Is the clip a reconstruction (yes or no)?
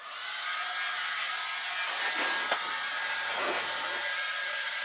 no